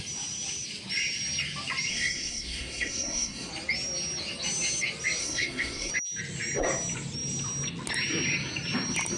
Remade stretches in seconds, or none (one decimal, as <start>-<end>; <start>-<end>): 1.9-3.5; 5.2-5.9